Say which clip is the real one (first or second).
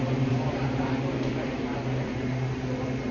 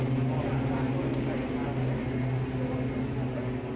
second